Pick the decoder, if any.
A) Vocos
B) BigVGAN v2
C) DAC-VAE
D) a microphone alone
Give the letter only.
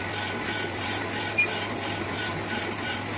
D